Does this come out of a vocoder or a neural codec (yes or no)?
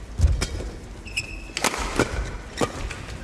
no